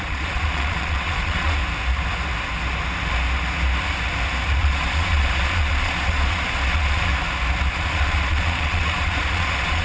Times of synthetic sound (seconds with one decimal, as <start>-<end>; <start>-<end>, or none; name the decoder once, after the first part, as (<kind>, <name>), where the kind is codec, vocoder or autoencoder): 0.0-1.6 (vocoder, Vocos); 4.6-7.1; 7.7-9.8